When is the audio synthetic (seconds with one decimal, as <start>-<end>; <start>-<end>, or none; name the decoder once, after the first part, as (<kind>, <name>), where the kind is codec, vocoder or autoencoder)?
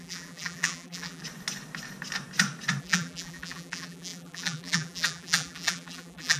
0.0-1.2 (vocoder, BigVGAN v2); 2.8-6.4